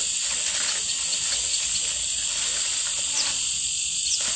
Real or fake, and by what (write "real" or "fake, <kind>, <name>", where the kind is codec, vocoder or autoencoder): real